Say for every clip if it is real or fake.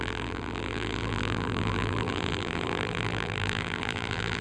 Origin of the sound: fake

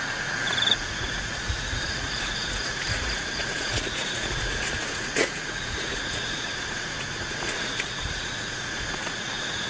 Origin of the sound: fake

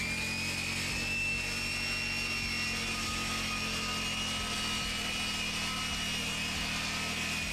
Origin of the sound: real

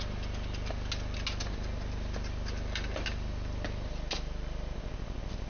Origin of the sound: real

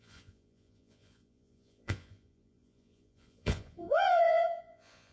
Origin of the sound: fake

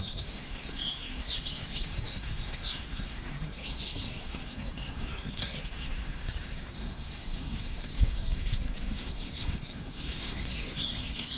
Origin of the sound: fake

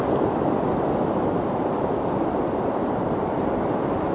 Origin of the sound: real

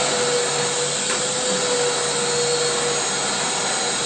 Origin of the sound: real